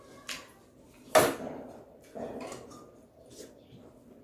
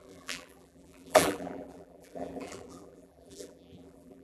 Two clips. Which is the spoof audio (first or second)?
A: second